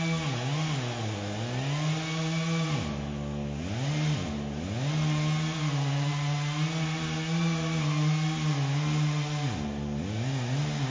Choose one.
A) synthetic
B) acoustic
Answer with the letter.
B